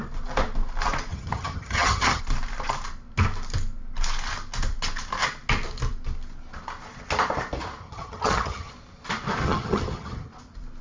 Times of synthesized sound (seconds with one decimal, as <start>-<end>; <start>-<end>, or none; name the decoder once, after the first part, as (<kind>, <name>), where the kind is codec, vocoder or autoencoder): 1.1-2.2 (vocoder, HiFi-GAN); 7.8-8.7; 9.4-10.3